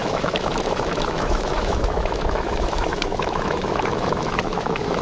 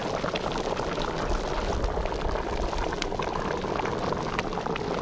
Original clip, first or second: second